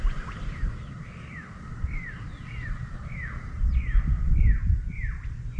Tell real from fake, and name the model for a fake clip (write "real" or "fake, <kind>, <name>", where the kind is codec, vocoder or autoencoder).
real